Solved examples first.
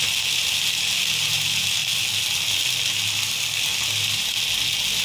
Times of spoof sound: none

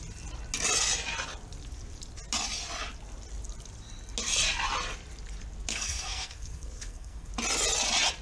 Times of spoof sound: 5.7-7.3 (codec, SNAC)

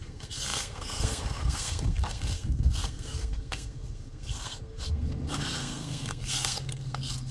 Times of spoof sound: 0.0-7.3 (codec, SNAC)

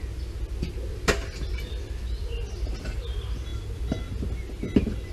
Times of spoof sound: none